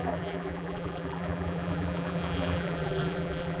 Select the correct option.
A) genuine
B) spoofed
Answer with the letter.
B